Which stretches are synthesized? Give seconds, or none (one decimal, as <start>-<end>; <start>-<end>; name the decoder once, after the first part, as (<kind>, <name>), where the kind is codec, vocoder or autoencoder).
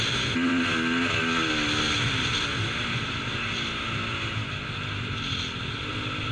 none